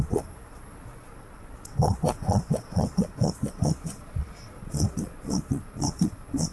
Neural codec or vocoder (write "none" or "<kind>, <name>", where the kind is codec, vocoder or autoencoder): vocoder, Vocos